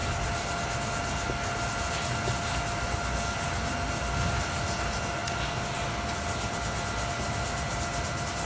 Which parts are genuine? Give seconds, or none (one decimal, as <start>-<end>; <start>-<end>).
0.0-8.5